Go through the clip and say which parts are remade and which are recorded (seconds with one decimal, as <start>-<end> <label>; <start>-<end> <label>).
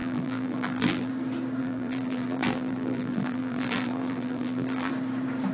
0.0-1.1 remade; 1.1-1.6 recorded; 1.6-4.9 remade; 4.9-5.5 recorded